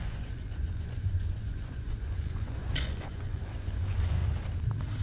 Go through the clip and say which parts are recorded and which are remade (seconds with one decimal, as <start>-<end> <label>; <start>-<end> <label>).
0.0-4.2 remade; 4.2-5.0 recorded